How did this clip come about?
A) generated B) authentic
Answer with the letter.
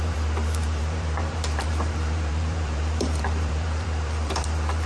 A